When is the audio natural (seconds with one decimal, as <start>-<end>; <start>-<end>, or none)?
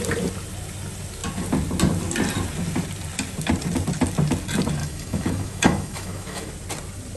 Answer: 0.0-4.8; 6.5-7.2